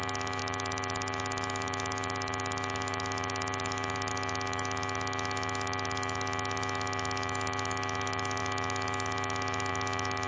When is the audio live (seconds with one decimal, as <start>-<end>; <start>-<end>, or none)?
0.0-0.4; 4.1-10.3